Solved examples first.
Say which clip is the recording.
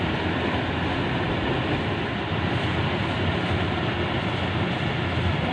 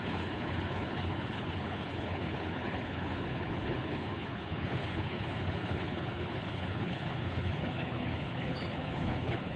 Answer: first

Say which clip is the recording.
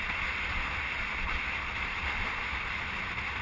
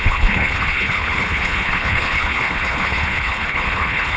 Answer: first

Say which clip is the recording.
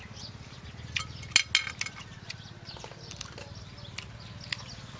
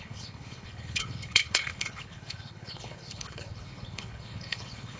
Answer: first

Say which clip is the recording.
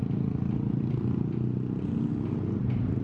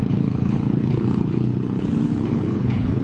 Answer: first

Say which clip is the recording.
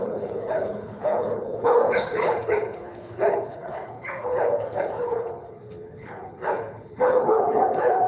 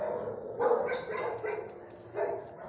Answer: second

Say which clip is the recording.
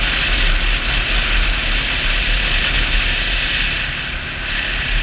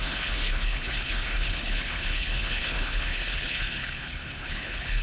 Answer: first